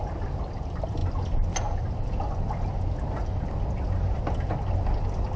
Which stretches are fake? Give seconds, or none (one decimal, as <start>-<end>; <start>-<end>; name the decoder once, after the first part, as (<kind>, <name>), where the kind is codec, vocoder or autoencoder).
none